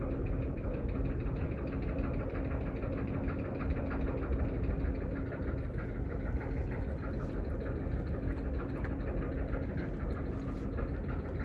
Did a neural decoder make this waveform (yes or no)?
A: no